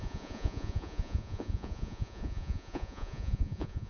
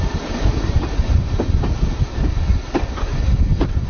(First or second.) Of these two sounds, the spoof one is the first